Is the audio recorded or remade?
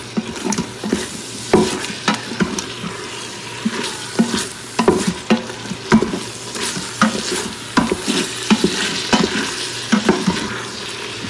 recorded